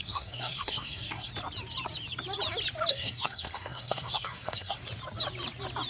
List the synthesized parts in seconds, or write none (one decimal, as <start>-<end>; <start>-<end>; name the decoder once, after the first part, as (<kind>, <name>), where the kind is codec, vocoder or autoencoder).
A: 0.0-1.3 (codec, SNAC); 2.9-4.8